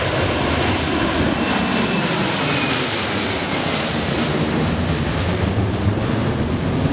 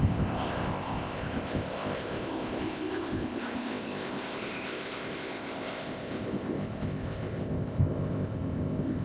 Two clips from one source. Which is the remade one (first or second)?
second